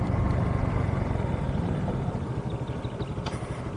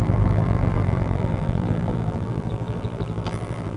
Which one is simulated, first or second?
second